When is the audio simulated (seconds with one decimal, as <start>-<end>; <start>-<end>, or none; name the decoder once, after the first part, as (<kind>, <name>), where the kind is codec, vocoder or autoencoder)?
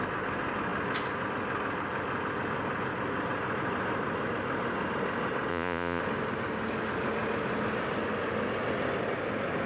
5.5-6.0 (vocoder, Vocos)